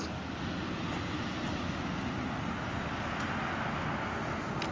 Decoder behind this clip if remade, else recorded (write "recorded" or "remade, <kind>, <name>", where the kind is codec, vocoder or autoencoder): recorded